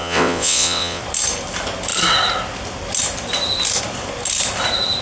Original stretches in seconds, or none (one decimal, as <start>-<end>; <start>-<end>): 1.0-5.0